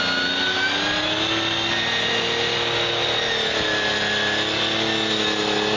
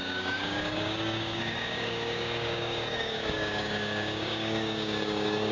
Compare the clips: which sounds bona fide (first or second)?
first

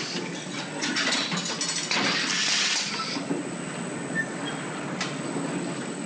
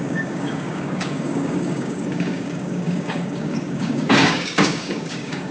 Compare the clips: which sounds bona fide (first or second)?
first